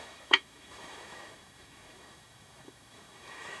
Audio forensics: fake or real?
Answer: fake